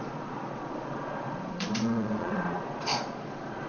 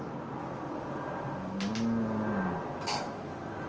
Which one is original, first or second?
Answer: second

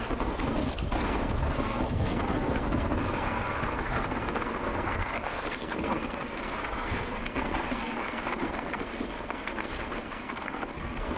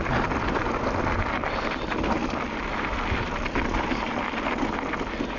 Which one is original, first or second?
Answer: second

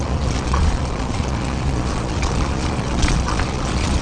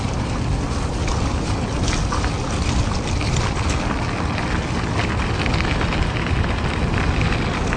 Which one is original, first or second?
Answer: second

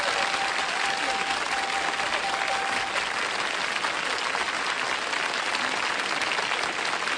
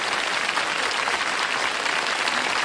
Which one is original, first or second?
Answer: first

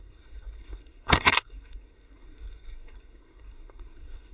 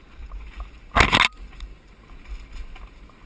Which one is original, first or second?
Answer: second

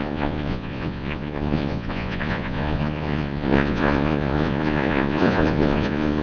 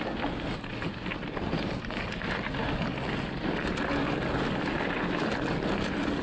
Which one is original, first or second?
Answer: second